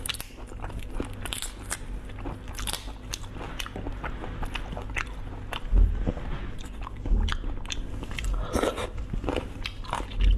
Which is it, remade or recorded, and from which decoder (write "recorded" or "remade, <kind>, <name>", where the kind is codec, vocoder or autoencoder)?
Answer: recorded